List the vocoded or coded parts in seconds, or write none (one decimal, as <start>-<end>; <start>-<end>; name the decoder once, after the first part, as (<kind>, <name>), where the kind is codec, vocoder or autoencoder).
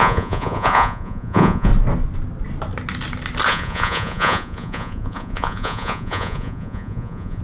0.0-1.7 (vocoder, Vocos); 3.5-7.4